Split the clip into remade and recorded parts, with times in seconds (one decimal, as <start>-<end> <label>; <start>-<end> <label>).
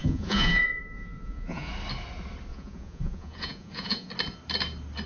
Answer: 0.0-1.7 remade; 1.7-2.5 recorded; 2.5-4.1 remade; 4.1-5.1 recorded